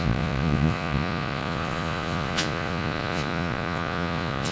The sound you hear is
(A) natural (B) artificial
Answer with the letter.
B